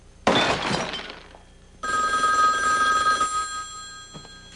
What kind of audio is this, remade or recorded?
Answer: recorded